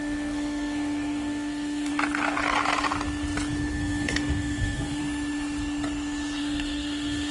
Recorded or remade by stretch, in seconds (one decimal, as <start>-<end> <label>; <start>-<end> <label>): 0.0-1.9 remade; 1.9-3.7 recorded; 3.7-5.0 remade; 5.0-6.4 recorded; 6.4-7.3 remade

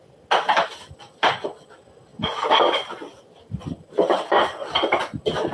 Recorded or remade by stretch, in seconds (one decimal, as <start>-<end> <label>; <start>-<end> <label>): 0.0-5.5 recorded